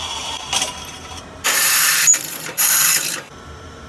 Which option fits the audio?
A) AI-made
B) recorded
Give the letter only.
A